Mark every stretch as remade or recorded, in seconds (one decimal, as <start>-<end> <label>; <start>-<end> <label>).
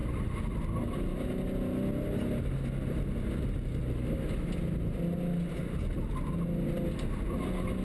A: 0.0-7.8 recorded